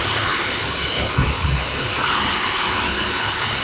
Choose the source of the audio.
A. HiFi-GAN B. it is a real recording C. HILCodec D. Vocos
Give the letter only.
C